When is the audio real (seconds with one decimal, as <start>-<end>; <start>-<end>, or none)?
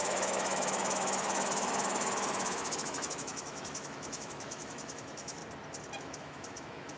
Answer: 5.4-6.0